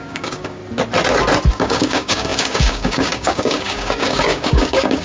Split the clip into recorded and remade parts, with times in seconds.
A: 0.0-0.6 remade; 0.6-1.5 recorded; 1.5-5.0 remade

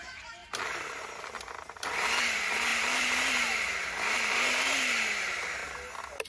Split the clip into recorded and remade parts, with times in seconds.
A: 0.0-5.6 remade; 5.6-6.3 recorded

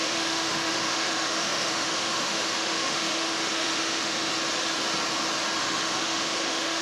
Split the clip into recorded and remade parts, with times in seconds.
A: 0.0-4.3 remade; 4.3-5.6 recorded; 5.6-6.8 remade